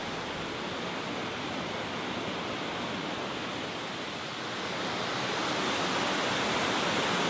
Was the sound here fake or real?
real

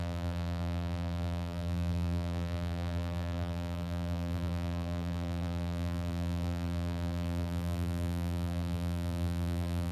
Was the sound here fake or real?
fake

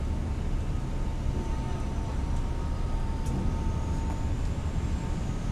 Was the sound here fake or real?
real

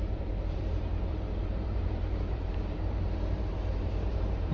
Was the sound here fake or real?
fake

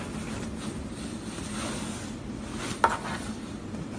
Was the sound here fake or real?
real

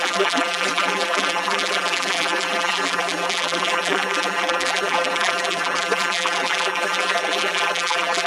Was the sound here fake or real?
fake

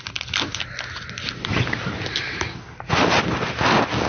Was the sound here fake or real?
real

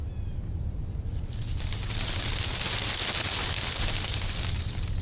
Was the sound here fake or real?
real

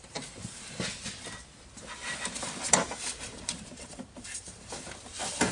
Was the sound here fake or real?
real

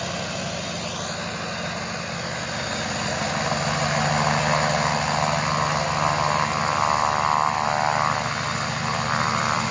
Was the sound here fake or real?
real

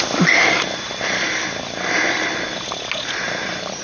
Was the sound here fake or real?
real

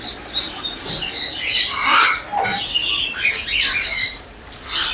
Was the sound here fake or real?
real